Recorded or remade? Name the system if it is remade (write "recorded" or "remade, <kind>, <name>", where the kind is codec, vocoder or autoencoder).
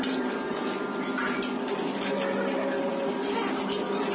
recorded